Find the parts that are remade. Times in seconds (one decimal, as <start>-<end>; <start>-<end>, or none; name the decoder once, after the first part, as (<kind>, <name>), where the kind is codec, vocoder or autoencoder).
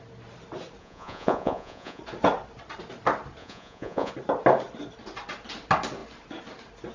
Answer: 0.8-2.0 (vocoder, Vocos); 3.4-4.1